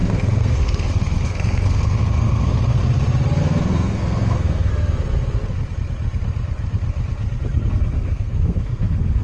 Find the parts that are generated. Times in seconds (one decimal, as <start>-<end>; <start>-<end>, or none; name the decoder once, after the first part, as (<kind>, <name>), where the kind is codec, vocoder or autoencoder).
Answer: 0.0-2.8 (codec, SNAC); 3.4-4.7; 7.7-9.2